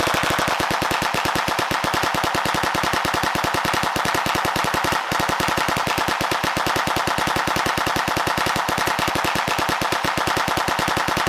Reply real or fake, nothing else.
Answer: real